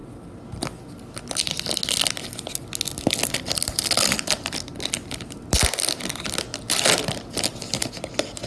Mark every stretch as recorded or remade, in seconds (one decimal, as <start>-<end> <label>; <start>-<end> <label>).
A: 0.0-8.5 recorded